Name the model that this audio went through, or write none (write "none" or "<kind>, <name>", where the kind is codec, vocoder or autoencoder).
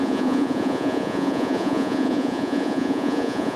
vocoder, Vocos